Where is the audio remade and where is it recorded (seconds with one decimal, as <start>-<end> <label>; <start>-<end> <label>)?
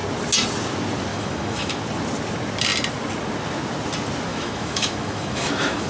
0.0-1.1 recorded; 1.1-1.8 remade; 1.8-4.3 recorded; 4.3-5.9 remade